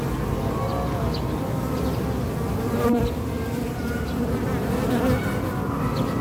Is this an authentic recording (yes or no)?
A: yes